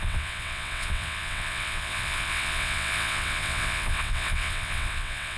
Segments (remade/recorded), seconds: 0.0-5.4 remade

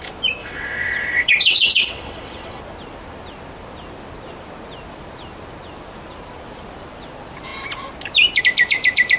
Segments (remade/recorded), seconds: 0.0-0.4 recorded; 0.4-2.6 remade; 2.6-9.2 recorded

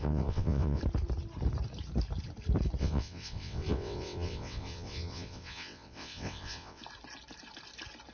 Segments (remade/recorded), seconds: 0.0-0.8 remade; 0.8-2.8 recorded; 2.8-6.8 remade; 6.8-8.1 recorded

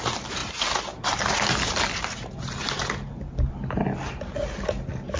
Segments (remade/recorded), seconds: 0.0-5.2 recorded

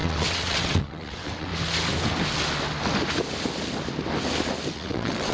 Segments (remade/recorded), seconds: 0.0-1.5 remade; 1.5-4.7 recorded; 4.7-5.3 remade

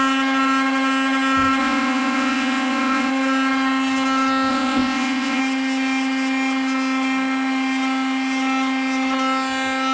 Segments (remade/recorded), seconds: 0.0-1.6 recorded; 1.6-3.1 remade; 3.1-4.5 recorded; 4.5-5.4 remade; 5.4-9.9 recorded

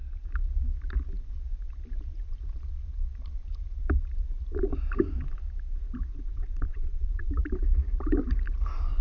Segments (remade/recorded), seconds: 0.0-6.1 recorded; 6.1-7.3 remade; 7.3-9.0 recorded